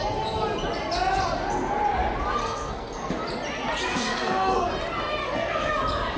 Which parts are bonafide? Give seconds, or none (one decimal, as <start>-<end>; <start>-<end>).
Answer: 0.0-2.4; 3.1-3.9; 4.7-5.2; 5.7-6.2